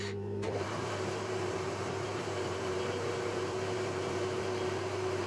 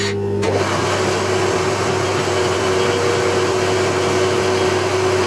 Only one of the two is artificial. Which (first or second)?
first